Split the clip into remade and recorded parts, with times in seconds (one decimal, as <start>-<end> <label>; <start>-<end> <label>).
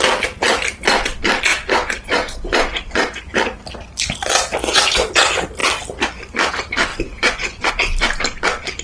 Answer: 0.0-1.5 recorded; 1.5-3.2 remade; 3.2-6.9 recorded; 6.9-7.7 remade; 7.7-8.8 recorded